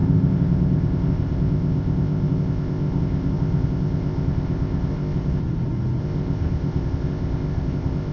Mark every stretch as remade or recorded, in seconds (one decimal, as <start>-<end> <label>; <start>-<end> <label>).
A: 0.0-5.4 remade; 5.4-6.0 recorded; 6.0-8.1 remade